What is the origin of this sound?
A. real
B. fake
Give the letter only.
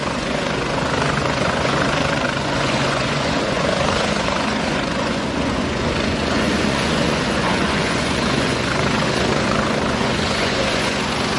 B